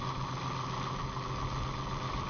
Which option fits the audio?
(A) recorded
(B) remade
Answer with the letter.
A